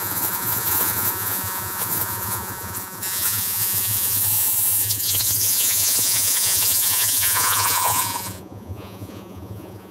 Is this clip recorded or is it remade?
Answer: remade